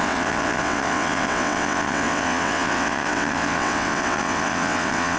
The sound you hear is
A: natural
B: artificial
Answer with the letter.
B